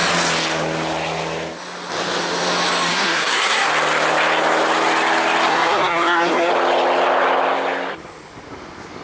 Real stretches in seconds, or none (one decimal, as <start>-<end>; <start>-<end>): 0.0-2.9; 3.7-5.5; 6.5-9.0

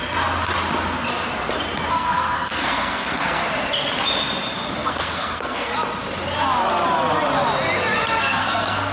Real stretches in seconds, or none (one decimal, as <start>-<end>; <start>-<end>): 0.0-1.9; 3.4-4.7; 5.7-8.2